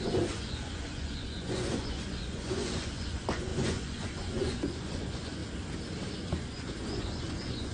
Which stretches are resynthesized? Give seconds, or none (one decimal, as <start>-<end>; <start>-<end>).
0.0-5.4; 6.1-7.7